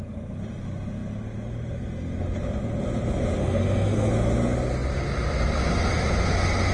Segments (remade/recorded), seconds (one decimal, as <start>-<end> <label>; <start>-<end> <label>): 0.0-3.4 recorded; 3.4-4.1 remade; 4.1-6.7 recorded